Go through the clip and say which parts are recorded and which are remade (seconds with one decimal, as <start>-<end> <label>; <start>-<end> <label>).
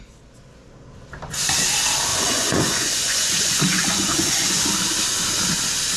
0.0-2.1 recorded; 2.1-4.7 remade; 4.7-6.0 recorded